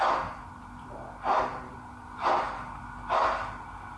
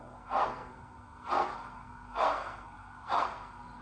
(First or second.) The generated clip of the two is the second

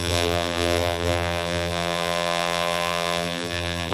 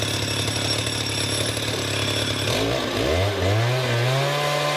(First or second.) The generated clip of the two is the first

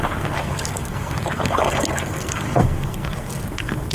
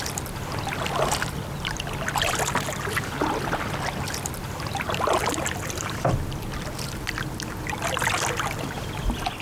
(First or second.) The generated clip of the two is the first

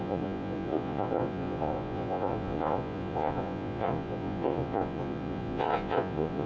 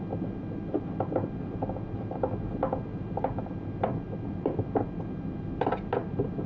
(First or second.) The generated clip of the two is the first